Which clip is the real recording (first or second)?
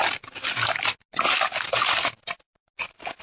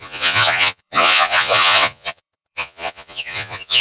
first